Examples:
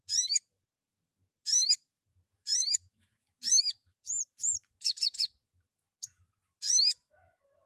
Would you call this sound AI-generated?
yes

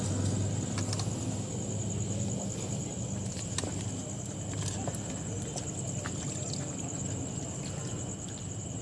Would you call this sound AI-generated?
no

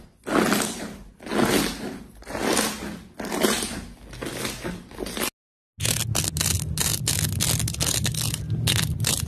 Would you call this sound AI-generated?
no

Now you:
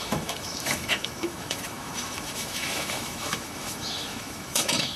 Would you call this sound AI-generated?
yes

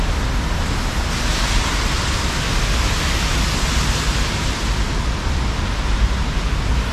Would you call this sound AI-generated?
no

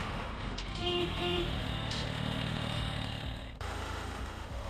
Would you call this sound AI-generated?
yes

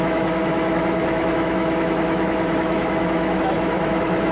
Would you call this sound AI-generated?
yes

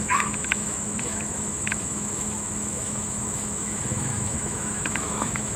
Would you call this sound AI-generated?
yes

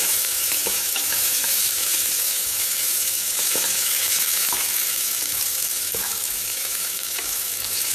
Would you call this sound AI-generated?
yes